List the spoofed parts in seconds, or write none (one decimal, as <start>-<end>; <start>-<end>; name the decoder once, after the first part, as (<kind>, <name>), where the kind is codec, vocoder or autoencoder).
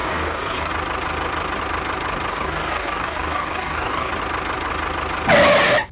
0.0-0.7 (codec, DAC); 2.3-4.1